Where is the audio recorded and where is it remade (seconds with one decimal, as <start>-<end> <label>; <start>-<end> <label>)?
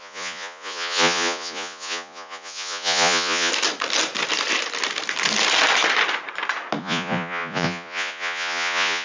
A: 0.0-3.5 remade; 3.5-6.8 recorded; 6.8-9.0 remade